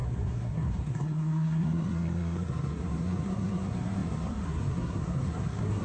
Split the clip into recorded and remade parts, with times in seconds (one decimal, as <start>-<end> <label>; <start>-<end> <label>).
0.0-5.8 remade